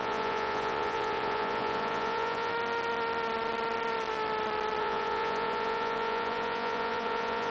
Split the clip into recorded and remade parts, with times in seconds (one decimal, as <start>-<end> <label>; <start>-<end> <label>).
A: 0.0-2.5 remade; 2.5-4.8 recorded; 4.8-7.5 remade